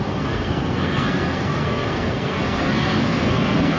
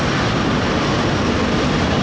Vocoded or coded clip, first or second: first